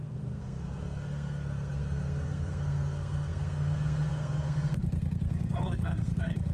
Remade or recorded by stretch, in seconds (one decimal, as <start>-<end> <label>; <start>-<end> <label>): 0.0-6.5 remade